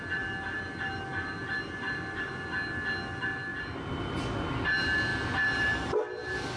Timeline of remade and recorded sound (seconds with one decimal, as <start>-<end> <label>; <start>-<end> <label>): 0.0-3.5 recorded; 3.5-4.2 remade; 4.2-5.1 recorded; 5.1-6.0 remade; 6.0-6.6 recorded